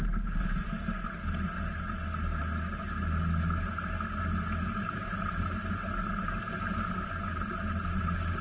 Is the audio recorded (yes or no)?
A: yes